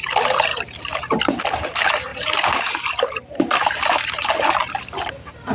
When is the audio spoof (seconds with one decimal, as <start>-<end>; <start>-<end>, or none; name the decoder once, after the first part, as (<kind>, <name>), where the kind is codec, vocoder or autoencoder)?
0.5-1.2 (vocoder, BigVGAN v2); 2.1-4.3

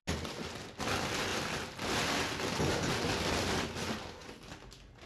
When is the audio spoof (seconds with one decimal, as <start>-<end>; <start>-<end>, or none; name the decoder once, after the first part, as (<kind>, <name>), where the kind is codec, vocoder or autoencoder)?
none

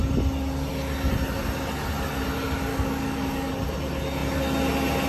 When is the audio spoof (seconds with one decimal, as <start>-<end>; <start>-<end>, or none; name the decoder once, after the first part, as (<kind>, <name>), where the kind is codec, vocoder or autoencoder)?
2.7-3.5 (codec, DAC)

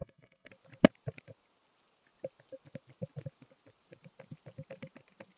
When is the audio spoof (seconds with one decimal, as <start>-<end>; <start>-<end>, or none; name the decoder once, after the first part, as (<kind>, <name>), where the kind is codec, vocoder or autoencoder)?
0.0-0.5 (codec, SNAC)